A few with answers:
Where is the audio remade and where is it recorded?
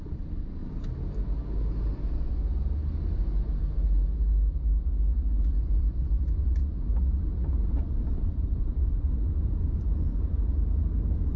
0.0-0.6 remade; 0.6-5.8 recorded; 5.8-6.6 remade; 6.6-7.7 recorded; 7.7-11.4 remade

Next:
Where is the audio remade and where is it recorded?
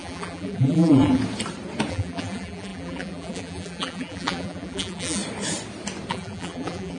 0.0-1.2 remade; 1.2-1.9 recorded; 1.9-5.2 remade; 5.2-6.1 recorded; 6.1-7.0 remade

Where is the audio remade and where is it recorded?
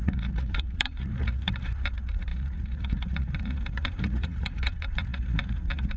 0.0-6.0 remade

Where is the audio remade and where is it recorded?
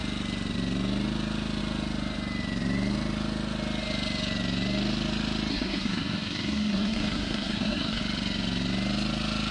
0.0-5.5 recorded; 5.5-8.0 remade; 8.0-9.5 recorded